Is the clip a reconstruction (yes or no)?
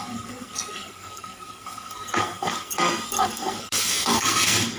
yes